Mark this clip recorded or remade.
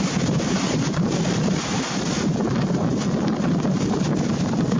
recorded